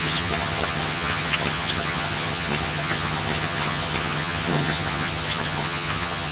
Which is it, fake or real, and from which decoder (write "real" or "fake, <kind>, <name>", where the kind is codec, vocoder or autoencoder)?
fake, vocoder, HiFi-GAN